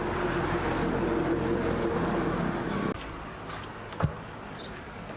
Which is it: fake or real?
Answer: real